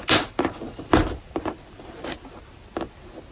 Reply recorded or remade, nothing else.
recorded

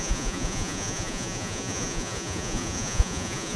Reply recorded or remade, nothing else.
remade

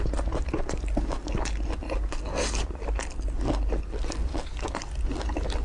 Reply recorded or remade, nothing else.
recorded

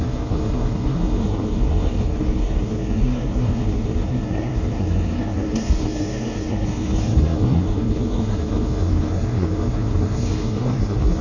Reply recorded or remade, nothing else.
remade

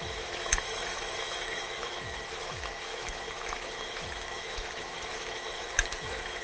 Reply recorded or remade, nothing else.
remade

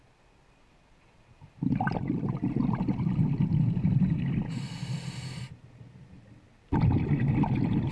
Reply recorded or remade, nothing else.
recorded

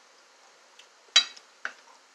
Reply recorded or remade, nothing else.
recorded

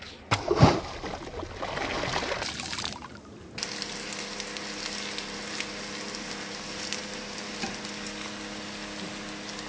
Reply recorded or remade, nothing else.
recorded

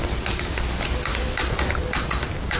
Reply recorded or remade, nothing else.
recorded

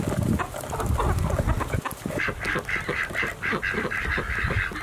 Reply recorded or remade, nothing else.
recorded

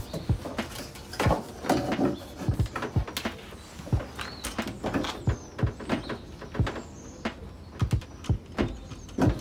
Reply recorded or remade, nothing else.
recorded